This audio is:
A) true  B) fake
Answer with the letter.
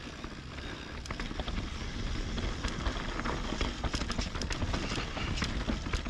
A